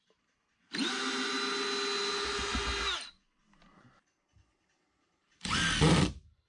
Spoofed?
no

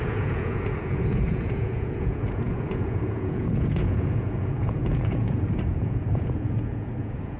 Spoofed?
yes